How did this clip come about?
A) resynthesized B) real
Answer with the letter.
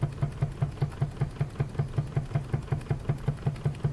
B